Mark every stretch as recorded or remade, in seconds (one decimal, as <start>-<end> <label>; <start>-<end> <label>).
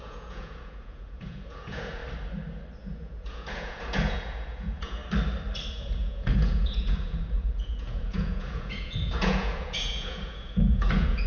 0.0-2.0 remade; 2.0-2.8 recorded; 2.8-5.0 remade; 5.0-5.7 recorded; 5.7-11.3 remade